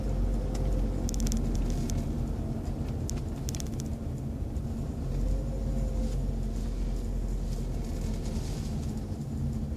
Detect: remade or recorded recorded